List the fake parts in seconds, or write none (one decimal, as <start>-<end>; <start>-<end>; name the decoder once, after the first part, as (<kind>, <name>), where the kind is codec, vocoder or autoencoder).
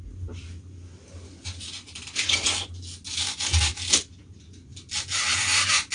3.1-3.7 (codec, DAC)